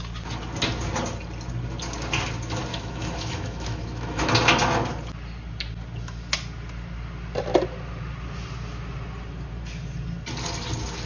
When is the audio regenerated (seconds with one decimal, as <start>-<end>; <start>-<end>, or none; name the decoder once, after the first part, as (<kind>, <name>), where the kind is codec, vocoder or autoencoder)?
2.7-4.3 (autoencoder, DAC-VAE)